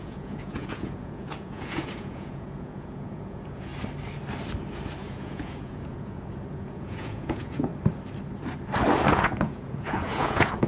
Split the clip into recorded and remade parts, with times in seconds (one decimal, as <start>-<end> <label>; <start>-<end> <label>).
0.0-3.7 remade; 3.7-5.0 recorded; 5.0-7.7 remade; 7.7-9.1 recorded; 9.1-10.7 remade